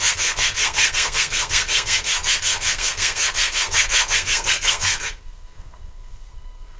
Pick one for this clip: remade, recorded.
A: remade